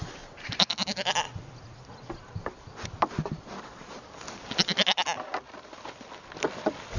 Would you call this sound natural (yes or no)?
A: yes